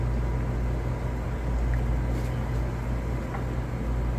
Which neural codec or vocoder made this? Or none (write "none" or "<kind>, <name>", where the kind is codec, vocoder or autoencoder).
none